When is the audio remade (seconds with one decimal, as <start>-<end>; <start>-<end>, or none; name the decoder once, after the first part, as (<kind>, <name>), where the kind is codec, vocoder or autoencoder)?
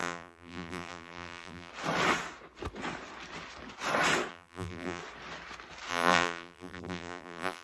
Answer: 0.0-1.7 (vocoder, BigVGAN v2); 4.3-5.0; 5.9-7.6